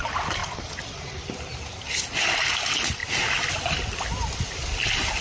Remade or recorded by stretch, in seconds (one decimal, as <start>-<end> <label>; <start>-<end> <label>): 0.0-5.2 recorded